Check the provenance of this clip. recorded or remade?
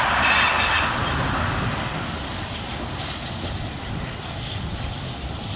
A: recorded